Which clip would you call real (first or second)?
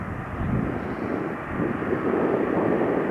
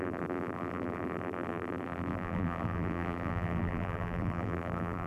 first